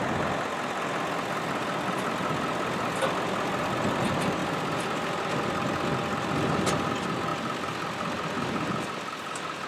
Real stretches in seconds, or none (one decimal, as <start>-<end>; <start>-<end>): 0.0-9.7

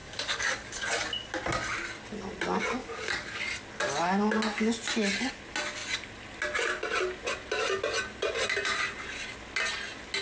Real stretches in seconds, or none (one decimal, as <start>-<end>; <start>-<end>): 0.8-2.8; 3.4-10.2